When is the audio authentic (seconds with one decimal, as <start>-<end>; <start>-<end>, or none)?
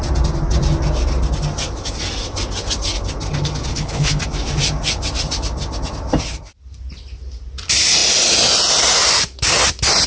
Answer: 0.0-3.7; 4.2-10.1